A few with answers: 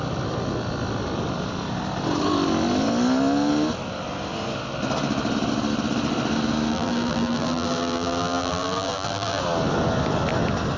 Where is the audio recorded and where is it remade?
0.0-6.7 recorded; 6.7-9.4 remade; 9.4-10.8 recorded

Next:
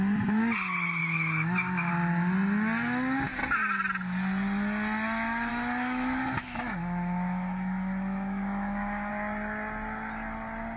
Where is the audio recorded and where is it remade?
0.0-1.0 recorded; 1.0-1.9 remade; 1.9-5.5 recorded; 5.5-9.1 remade; 9.1-10.8 recorded

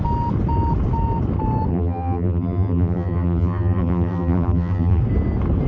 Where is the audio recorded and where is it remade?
0.0-1.7 recorded; 1.7-5.0 remade; 5.0-5.7 recorded

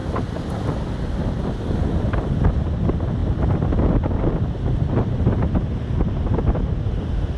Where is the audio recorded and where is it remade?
0.0-7.4 recorded

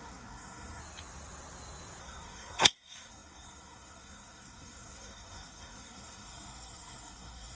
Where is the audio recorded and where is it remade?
0.0-0.8 remade; 0.8-2.0 recorded; 2.0-7.5 remade

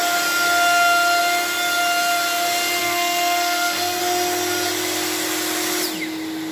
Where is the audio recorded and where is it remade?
0.0-2.8 recorded; 2.8-4.0 remade; 4.0-6.5 recorded

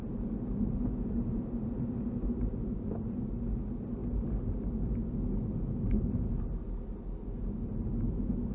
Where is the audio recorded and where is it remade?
0.0-8.5 recorded

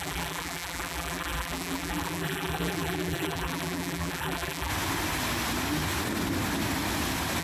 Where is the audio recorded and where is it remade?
0.0-4.7 remade; 4.7-7.4 recorded